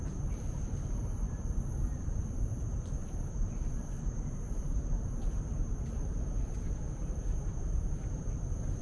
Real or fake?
fake